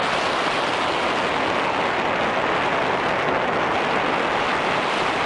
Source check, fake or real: real